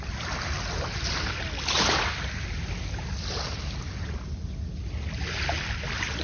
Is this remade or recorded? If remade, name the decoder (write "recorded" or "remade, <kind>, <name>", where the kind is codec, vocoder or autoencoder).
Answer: recorded